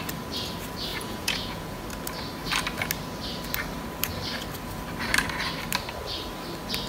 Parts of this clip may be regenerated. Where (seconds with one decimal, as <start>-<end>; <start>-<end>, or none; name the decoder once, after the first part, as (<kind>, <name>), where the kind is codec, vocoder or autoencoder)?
0.9-1.8 (vocoder, Vocos)